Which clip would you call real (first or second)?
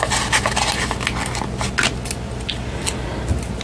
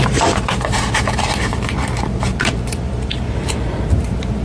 first